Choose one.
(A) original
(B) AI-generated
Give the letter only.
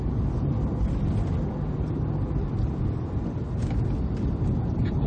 A